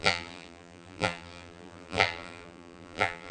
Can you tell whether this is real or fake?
fake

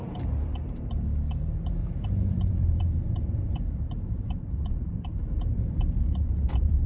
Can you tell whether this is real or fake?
fake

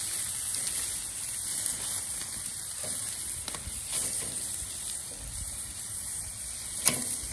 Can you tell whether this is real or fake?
real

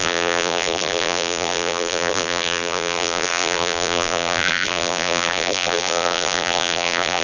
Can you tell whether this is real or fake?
fake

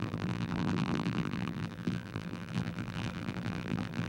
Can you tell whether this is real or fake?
fake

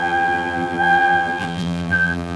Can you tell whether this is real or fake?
fake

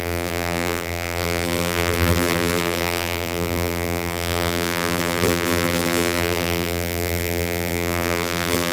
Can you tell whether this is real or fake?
fake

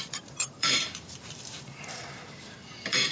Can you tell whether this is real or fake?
fake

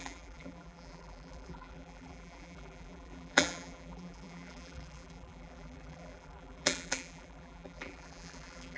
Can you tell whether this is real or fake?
fake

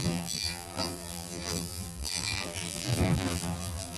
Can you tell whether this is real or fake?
fake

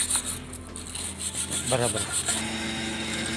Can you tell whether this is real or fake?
real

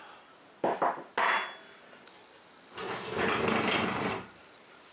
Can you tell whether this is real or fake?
real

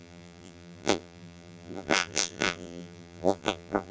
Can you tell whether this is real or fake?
fake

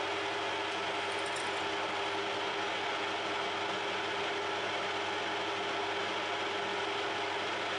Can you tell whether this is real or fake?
real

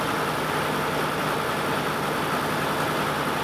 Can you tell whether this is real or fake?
real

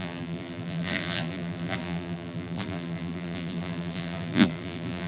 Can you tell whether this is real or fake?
fake